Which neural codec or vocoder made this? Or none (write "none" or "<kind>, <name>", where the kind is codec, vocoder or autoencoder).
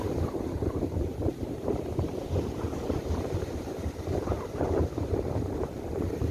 vocoder, BigVGAN v2